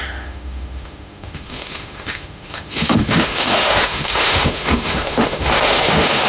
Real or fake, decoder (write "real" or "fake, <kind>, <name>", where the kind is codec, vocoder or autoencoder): fake, autoencoder, DAC-VAE